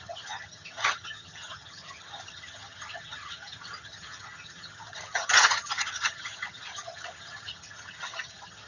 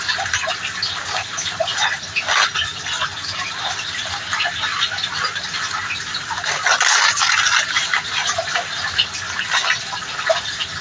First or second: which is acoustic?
second